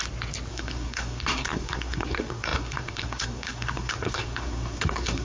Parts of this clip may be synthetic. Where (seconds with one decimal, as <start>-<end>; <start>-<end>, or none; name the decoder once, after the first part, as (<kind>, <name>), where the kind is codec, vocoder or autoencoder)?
0.5-5.2 (codec, SNAC)